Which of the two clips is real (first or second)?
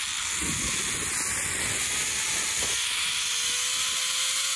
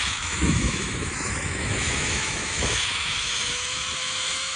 first